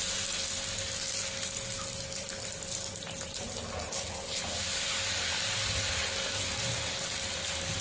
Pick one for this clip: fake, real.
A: real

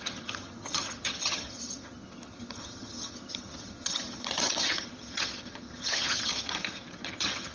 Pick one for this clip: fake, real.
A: fake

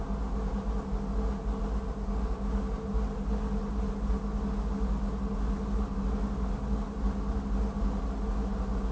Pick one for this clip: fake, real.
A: real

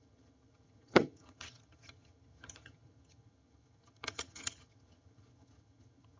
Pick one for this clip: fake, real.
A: fake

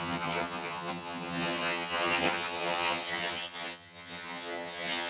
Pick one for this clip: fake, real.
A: fake